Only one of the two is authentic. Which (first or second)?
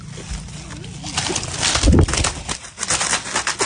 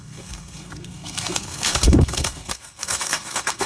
first